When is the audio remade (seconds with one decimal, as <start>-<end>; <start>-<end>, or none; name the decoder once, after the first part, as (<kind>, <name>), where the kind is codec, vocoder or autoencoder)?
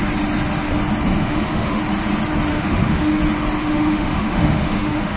1.2-1.8 (autoencoder, DAC-VAE); 2.5-3.2; 3.6-5.2